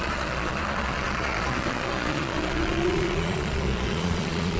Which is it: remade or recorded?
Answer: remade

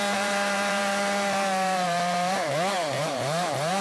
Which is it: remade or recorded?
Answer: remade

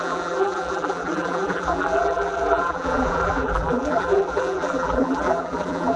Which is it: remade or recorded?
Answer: remade